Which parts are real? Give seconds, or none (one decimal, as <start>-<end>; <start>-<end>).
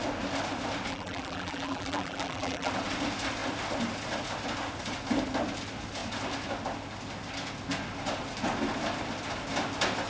0.0-0.9; 2.7-10.1